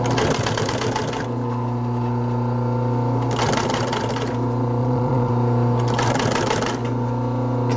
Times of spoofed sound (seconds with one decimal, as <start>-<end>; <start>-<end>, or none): 4.8-5.3